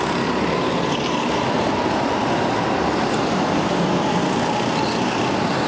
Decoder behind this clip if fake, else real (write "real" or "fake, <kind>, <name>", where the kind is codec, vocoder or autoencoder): real